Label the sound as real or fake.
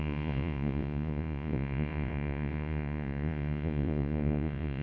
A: fake